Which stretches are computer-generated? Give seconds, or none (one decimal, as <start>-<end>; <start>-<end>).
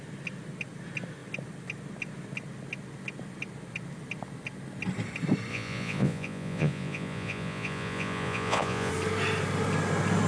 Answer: 5.5-8.9